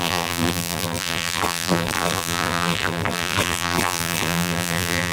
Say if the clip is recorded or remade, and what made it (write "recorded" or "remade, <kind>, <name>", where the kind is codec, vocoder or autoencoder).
remade, vocoder, BigVGAN v2